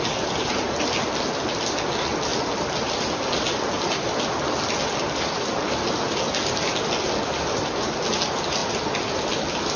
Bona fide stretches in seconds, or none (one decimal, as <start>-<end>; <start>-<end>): 0.0-9.8